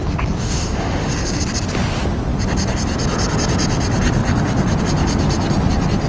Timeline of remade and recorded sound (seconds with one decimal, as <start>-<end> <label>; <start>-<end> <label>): 0.0-0.4 recorded; 0.4-1.4 remade; 1.4-6.1 recorded